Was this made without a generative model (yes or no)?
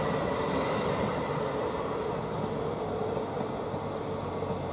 yes